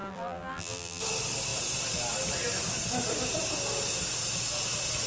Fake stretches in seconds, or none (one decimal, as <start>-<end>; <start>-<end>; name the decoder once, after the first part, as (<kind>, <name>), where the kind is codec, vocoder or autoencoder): 0.0-1.0 (vocoder, BigVGAN v2)

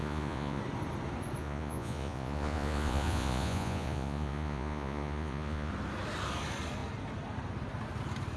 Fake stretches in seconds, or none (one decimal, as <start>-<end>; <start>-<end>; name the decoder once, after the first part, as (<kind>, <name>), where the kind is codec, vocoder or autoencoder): 0.0-0.6 (vocoder, Vocos); 1.4-5.7

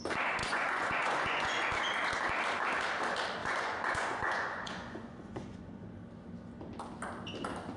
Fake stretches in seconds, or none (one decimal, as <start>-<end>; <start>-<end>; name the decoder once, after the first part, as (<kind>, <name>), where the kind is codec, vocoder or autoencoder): 0.4-1.7 (vocoder, Vocos); 3.4-5.9

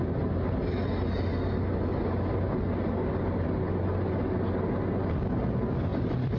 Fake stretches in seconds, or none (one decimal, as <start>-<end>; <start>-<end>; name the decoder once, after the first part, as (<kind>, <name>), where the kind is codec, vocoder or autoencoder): none

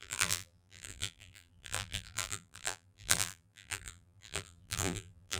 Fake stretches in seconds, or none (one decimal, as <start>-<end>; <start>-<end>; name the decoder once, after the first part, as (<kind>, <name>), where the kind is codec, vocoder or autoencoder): 0.0-5.4 (vocoder, BigVGAN v2)

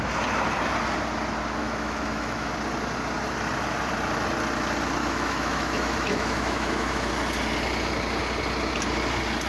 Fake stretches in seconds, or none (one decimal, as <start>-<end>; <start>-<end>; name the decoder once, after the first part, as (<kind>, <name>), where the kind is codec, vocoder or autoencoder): 1.6-2.5 (autoencoder, DAC-VAE); 5.0-7.1